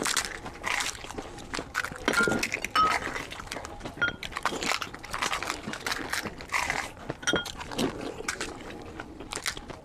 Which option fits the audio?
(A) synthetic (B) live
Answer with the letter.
B